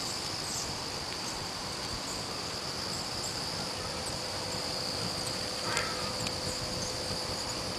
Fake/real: real